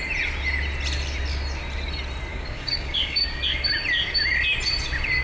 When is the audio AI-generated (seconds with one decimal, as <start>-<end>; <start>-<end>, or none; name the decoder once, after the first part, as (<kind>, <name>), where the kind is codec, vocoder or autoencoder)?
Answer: 2.3-3.4 (codec, DAC)

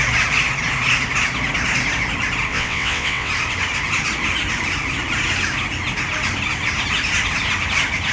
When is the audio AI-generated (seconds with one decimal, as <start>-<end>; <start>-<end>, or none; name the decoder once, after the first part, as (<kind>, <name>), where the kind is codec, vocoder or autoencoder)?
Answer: 2.5-3.3 (vocoder, WaveNeXt)

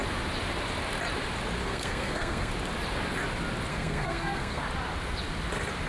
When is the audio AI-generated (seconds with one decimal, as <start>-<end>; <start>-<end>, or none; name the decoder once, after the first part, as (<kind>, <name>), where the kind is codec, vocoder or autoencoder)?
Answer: 1.6-2.5 (codec, SNAC); 3.7-4.6

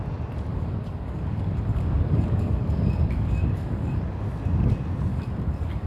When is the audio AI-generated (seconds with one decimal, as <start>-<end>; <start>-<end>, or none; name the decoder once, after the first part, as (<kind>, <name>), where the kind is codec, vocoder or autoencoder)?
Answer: 0.5-4.0 (codec, DAC); 5.1-5.9